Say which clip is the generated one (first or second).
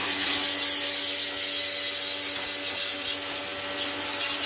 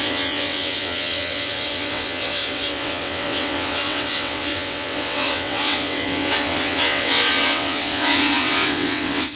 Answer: second